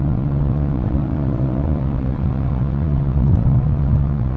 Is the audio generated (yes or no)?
yes